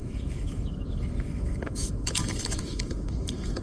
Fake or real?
fake